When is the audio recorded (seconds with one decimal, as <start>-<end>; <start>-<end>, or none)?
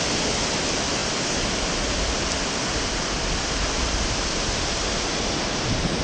0.0-6.0